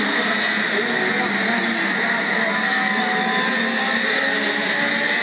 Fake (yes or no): no